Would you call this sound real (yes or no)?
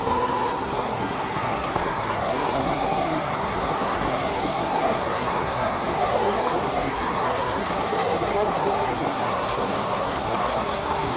no